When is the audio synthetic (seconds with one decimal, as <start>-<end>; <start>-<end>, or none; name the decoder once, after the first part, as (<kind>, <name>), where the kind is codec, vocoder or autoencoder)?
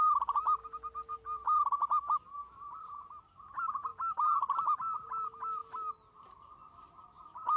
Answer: none